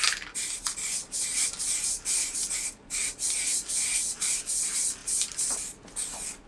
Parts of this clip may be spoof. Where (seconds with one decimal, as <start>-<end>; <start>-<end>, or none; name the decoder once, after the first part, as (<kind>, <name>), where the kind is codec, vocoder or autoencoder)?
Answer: 1.0-4.4 (vocoder, BigVGAN v2)